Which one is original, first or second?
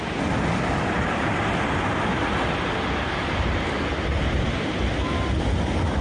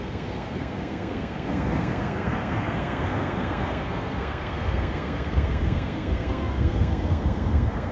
first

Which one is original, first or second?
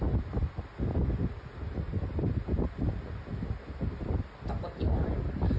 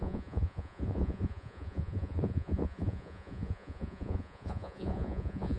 first